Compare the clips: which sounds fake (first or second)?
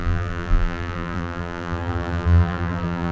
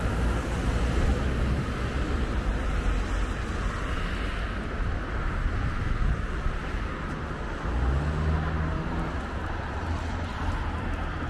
first